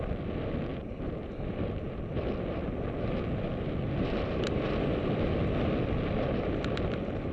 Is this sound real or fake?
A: real